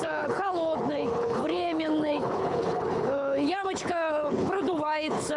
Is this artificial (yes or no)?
yes